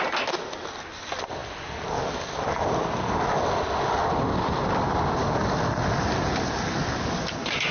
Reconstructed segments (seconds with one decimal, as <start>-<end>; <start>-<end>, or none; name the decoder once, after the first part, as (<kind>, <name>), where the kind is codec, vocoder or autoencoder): none